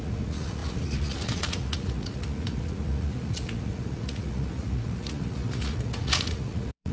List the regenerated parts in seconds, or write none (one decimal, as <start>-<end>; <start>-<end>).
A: 0.0-6.9